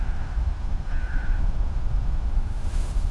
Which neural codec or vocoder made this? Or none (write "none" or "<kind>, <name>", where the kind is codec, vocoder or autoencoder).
autoencoder, DAC-VAE